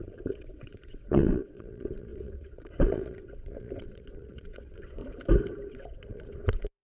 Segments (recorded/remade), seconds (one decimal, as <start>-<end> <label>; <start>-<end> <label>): 0.0-5.0 remade; 5.0-5.7 recorded; 5.7-6.8 remade